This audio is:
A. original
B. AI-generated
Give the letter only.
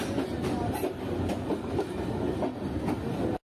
A